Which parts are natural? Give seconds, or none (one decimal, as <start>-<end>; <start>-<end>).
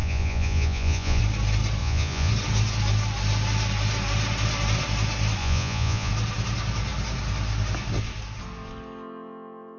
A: 1.2-1.8; 2.3-5.4; 6.1-9.8